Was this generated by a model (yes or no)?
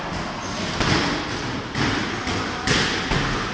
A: no